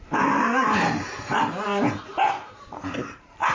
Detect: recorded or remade remade